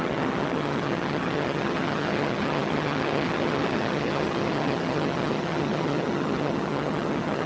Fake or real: fake